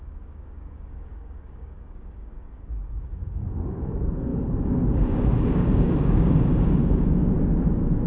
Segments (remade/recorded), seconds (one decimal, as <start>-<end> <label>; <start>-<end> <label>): 0.0-7.2 remade; 7.2-8.1 recorded